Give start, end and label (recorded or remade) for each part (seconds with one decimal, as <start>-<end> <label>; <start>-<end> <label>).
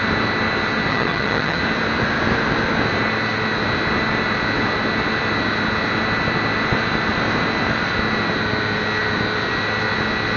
0.0-0.9 recorded; 0.9-1.6 remade; 1.6-10.4 recorded